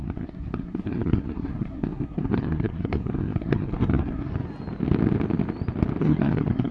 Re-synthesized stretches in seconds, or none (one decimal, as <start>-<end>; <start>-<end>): 0.0-4.3; 6.0-6.7